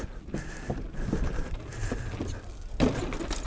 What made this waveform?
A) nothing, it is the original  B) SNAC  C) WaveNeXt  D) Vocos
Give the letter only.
A